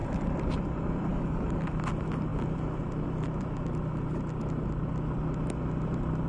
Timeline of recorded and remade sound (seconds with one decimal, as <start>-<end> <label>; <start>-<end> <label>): 0.0-1.1 recorded; 1.1-1.6 remade; 1.6-6.3 recorded